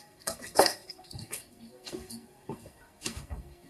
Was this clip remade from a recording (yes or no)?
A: yes